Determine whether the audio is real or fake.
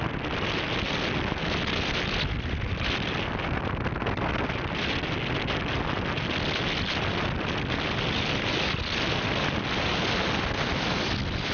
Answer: real